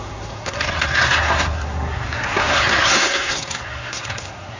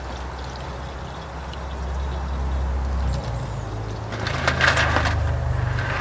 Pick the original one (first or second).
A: second